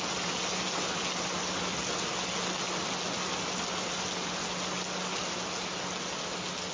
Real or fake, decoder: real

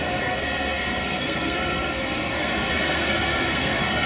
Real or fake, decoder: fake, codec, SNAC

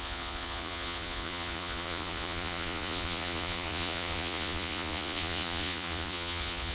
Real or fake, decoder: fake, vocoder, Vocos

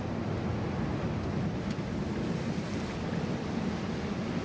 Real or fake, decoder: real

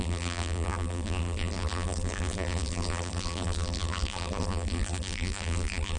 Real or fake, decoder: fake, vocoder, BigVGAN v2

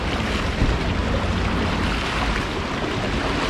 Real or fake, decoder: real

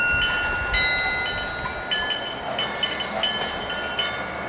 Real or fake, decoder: real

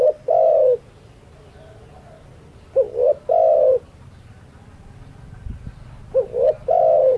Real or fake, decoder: real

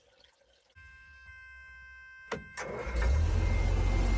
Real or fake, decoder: real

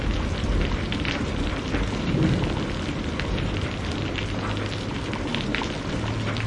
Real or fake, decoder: fake, vocoder, BigVGAN v2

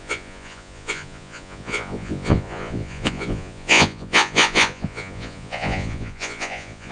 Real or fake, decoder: fake, vocoder, Vocos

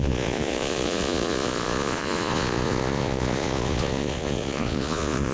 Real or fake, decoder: fake, vocoder, Vocos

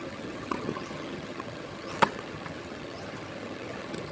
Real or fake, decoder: fake, vocoder, HiFi-GAN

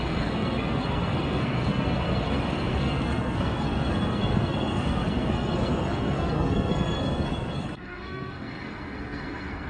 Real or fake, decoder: fake, codec, SNAC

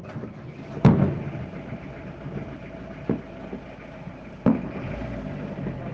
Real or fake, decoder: real